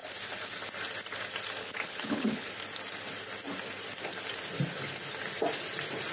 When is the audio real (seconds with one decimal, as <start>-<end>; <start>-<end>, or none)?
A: 0.0-1.6; 2.5-6.1